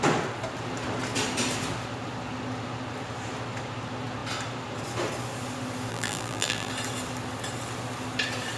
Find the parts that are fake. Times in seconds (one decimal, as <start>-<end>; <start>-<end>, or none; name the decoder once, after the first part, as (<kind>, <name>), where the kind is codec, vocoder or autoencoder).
5.9-6.7 (vocoder, BigVGAN v2)